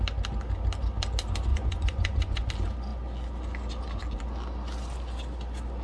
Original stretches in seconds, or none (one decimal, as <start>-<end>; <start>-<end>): 0.0-1.5; 2.5-5.8